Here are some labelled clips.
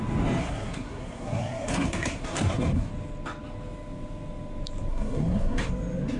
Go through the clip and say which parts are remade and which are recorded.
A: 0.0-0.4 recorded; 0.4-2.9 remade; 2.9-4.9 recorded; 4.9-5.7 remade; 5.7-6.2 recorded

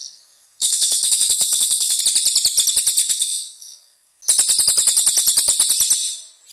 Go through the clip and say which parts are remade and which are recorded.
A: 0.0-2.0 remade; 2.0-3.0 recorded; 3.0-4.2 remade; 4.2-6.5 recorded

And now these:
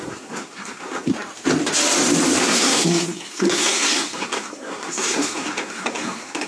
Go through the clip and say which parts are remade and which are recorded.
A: 0.0-1.1 remade; 1.1-2.4 recorded; 2.4-6.5 remade

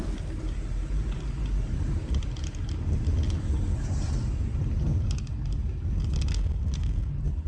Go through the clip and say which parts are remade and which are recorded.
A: 0.0-6.3 recorded; 6.3-7.1 remade; 7.1-7.5 recorded